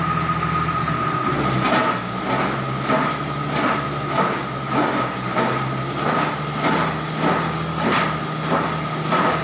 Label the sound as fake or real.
real